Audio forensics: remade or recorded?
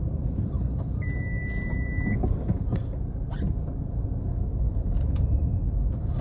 remade